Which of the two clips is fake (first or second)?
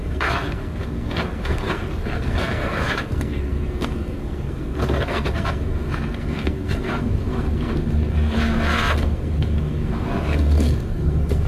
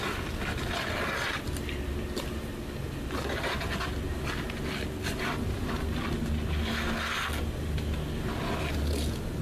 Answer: first